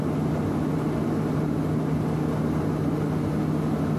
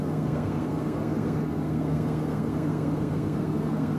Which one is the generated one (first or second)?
second